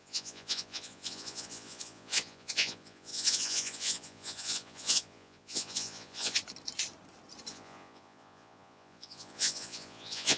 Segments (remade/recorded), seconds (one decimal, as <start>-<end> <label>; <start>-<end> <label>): 0.0-6.4 remade; 6.4-7.5 recorded; 7.5-10.4 remade